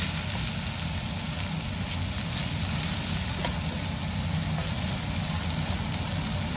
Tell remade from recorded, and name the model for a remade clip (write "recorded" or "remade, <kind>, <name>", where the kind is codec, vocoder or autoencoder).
recorded